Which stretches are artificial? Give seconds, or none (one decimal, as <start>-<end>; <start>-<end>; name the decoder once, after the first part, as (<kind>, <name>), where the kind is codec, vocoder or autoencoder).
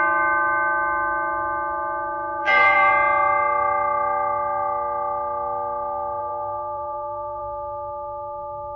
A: 2.4-2.9 (vocoder, BigVGAN v2); 6.2-7.4